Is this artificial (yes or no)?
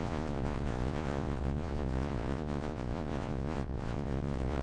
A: yes